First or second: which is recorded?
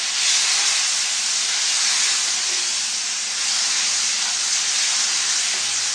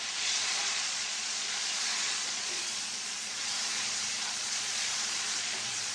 first